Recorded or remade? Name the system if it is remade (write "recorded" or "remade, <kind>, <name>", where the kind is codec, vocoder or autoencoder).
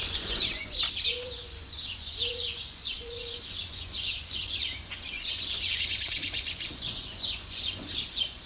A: remade, vocoder, Vocos